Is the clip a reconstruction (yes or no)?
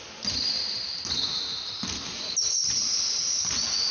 no